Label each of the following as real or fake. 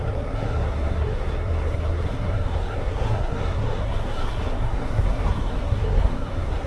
fake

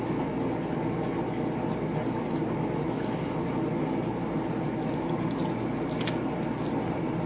real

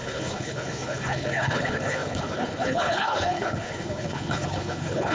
fake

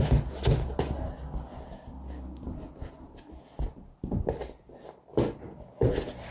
real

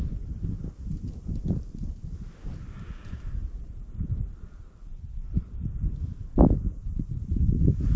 fake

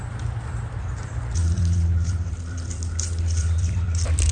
fake